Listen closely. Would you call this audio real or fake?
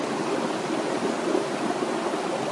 real